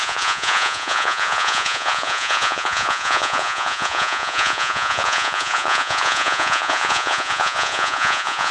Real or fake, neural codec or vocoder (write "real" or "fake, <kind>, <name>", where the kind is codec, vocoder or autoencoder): fake, vocoder, Vocos